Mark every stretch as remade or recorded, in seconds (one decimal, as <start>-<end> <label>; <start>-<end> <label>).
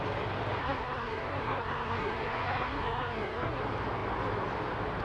0.0-0.6 recorded; 0.6-3.6 remade; 3.6-5.0 recorded